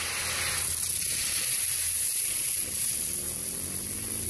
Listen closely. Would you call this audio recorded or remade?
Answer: recorded